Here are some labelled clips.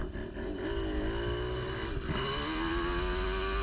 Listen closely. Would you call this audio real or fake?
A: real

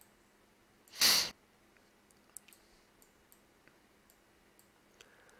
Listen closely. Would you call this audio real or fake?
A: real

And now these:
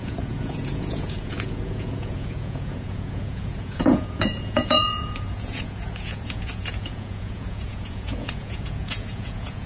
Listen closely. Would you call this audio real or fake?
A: fake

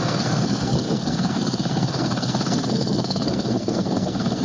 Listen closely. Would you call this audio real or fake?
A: fake